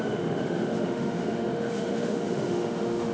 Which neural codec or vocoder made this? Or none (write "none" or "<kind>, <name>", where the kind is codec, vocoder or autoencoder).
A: autoencoder, DAC-VAE